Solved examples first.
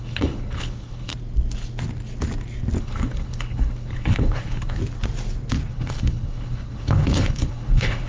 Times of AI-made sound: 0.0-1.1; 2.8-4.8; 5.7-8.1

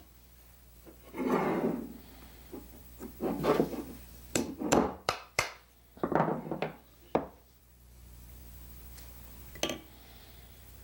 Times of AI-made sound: 0.0-2.8; 4.1-6.3; 7.6-8.4; 10.2-10.8